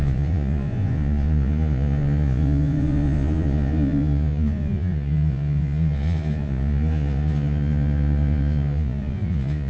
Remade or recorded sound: remade